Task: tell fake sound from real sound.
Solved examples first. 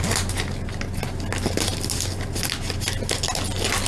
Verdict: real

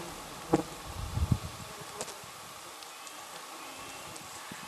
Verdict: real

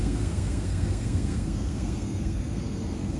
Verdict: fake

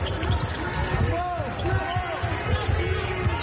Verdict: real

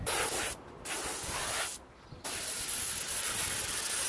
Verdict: real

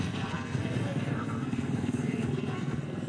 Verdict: fake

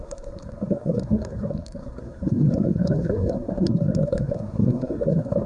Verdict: fake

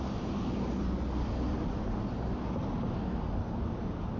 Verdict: real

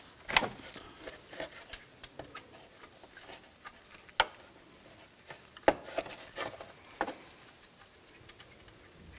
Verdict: real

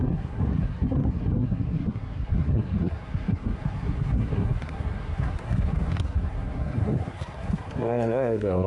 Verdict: fake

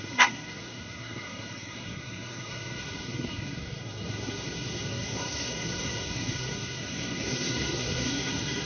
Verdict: fake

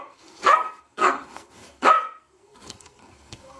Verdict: fake